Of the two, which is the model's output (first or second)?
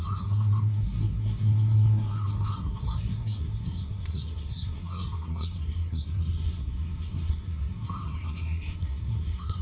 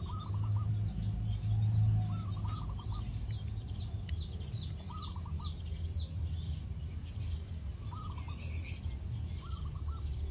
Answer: first